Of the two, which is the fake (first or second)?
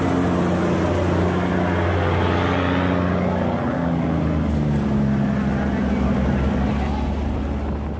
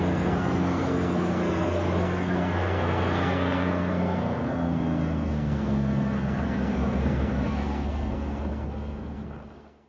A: second